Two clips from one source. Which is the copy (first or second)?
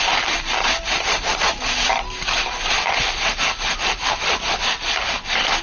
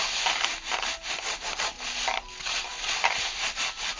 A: first